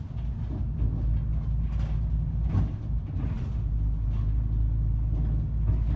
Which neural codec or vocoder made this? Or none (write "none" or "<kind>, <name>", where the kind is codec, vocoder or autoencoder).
none